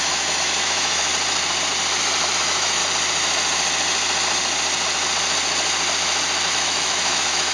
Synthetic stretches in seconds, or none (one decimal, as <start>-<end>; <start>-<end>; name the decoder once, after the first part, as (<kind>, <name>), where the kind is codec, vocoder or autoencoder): 0.0-1.1 (autoencoder, DAC-VAE); 2.4-2.8; 6.5-7.5